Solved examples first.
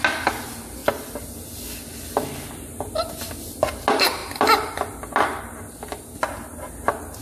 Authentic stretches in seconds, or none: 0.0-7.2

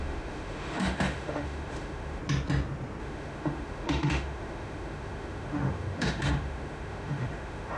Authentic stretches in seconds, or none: 2.2-3.0